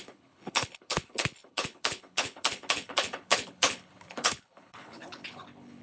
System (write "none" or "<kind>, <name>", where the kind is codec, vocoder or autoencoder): codec, HILCodec